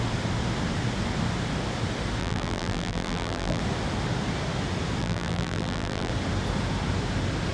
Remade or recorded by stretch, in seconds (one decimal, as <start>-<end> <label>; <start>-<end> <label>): 0.0-2.2 recorded; 2.2-3.6 remade; 3.6-5.0 recorded; 5.0-6.1 remade; 6.1-7.5 recorded